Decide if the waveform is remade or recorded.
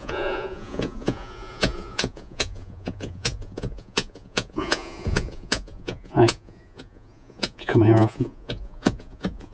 remade